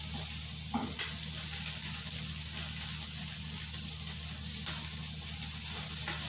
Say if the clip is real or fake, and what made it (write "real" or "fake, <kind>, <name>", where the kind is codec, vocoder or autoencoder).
real